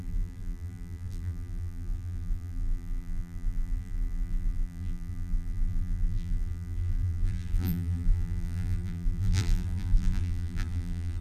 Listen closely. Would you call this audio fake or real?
fake